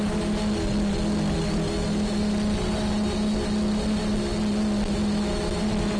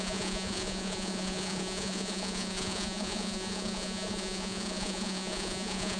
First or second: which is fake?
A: second